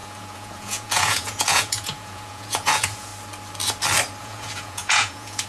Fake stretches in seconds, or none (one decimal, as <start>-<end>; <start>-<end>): 0.0-3.1; 4.2-5.5